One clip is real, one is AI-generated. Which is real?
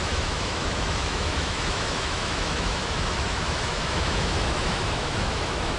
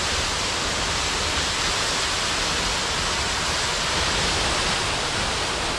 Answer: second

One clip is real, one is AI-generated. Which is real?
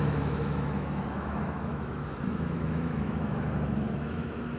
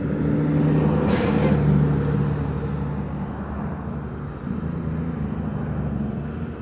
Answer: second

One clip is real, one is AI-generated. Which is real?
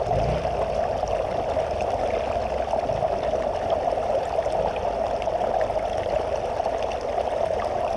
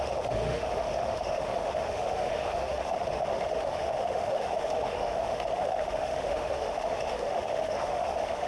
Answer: first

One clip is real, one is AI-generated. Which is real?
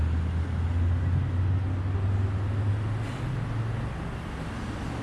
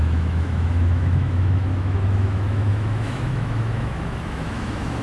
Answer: first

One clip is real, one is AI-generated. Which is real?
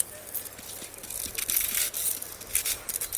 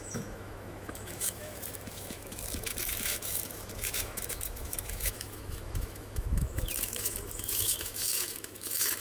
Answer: first